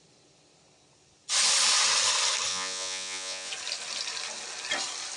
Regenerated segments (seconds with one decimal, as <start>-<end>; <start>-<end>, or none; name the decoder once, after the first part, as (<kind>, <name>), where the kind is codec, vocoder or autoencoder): 2.5-3.5 (vocoder, Vocos)